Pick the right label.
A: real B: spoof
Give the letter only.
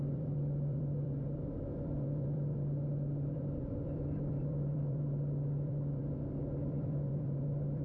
B